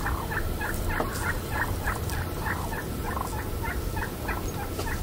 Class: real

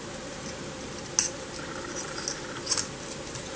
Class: real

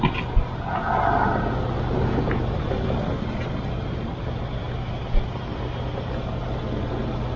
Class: real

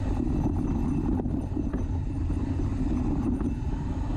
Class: real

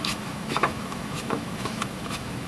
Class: fake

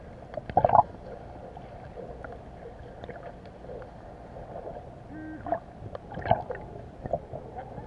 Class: real